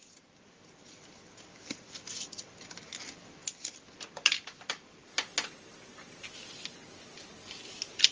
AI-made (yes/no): no